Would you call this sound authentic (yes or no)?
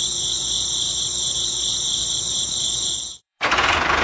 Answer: no